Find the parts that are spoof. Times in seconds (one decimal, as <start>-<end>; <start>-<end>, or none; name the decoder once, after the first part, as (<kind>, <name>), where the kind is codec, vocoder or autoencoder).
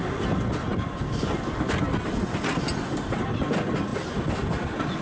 none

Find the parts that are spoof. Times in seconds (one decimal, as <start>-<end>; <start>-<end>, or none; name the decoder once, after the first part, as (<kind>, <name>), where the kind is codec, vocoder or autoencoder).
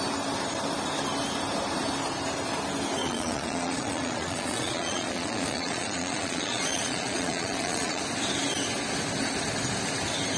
3.0-8.0 (vocoder, Vocos)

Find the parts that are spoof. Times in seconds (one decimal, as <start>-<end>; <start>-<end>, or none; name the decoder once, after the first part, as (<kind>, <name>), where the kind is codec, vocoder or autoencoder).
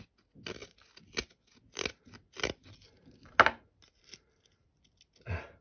none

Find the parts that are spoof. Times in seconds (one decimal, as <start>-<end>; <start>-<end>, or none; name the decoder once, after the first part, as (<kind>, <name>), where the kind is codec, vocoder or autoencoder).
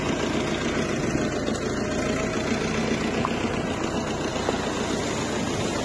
none